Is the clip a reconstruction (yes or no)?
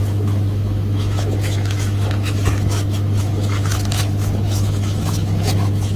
yes